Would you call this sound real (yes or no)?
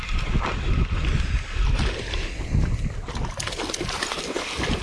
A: yes